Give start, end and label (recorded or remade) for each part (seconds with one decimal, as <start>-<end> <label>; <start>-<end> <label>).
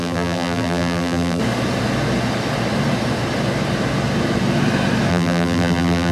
0.0-1.4 remade; 1.4-5.1 recorded; 5.1-6.1 remade